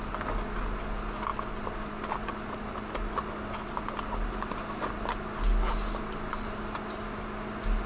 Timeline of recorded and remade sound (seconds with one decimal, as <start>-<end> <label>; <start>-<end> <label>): 0.0-7.9 recorded